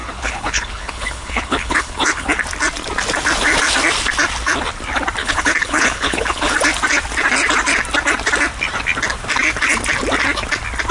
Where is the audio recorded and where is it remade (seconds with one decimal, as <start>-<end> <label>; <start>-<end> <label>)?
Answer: 0.0-2.3 remade; 2.3-5.2 recorded; 5.2-6.5 remade; 6.5-10.9 recorded